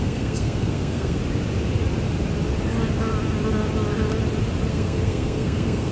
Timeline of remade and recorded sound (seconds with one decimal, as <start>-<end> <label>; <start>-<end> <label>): 0.0-1.2 remade; 1.2-4.7 recorded; 4.7-5.9 remade